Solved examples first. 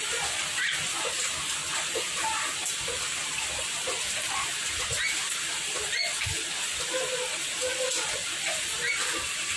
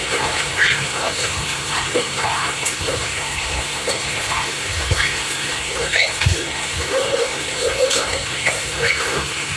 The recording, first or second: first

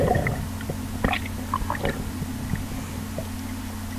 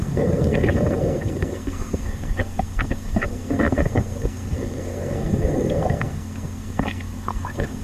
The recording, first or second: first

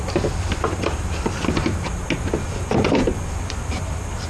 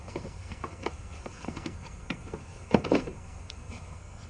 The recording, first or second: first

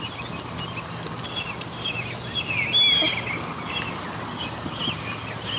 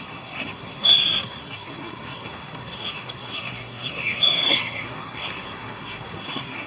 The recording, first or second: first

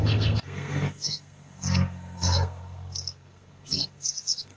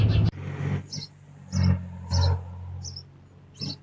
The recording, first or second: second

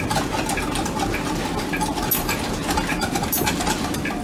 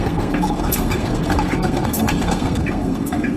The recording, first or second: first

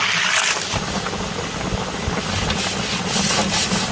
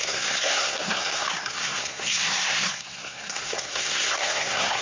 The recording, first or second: first